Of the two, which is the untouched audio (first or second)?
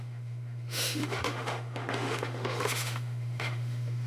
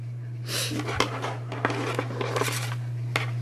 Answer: second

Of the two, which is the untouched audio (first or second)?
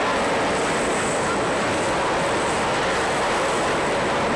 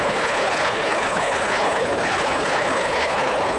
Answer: first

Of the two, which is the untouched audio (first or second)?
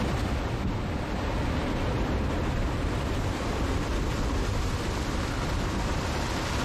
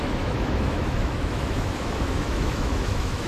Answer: first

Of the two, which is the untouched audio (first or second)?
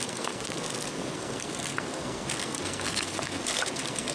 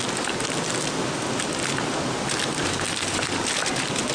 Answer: second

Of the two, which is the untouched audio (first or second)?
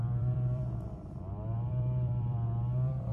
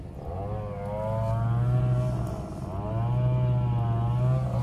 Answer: second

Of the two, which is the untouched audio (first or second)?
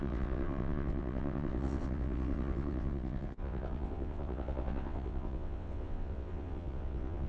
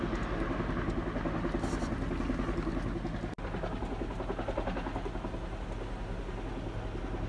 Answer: second